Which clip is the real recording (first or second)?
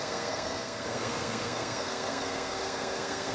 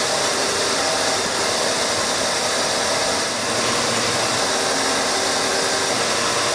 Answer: second